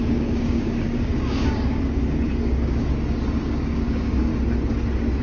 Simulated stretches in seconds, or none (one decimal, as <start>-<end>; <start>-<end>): 0.0-2.9; 3.4-4.3